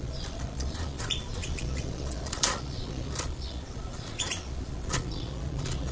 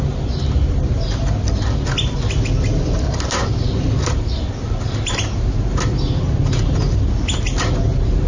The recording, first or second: second